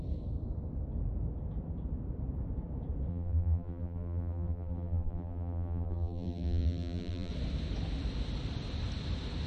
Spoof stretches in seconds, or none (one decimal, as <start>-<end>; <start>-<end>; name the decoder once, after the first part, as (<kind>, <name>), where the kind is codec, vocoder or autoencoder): 3.1-7.3 (vocoder, BigVGAN v2)